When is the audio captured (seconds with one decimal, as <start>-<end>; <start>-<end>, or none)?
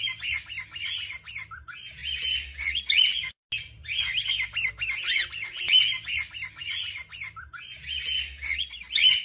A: 0.0-9.2